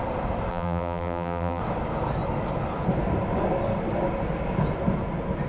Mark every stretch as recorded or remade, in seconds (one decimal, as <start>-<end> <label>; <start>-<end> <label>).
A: 0.0-0.5 recorded; 0.5-1.6 remade; 1.6-5.5 recorded